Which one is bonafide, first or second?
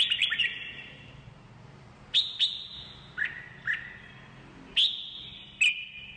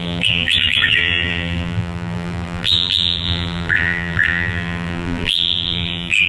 first